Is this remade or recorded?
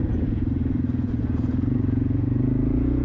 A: remade